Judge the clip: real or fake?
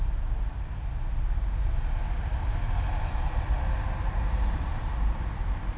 real